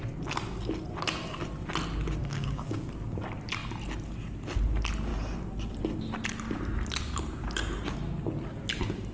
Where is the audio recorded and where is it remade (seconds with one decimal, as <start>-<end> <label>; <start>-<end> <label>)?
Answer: 0.0-2.2 recorded; 2.2-2.9 remade; 2.9-9.1 recorded

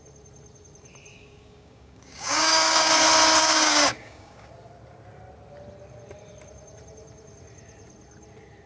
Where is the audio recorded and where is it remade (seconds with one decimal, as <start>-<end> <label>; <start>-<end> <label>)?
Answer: 0.0-1.1 recorded; 1.1-2.9 remade; 2.9-3.4 recorded; 3.4-4.5 remade; 4.5-8.7 recorded

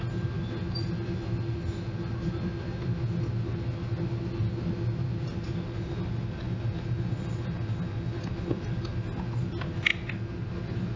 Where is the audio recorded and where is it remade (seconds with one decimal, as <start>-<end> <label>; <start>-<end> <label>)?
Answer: 0.0-11.0 recorded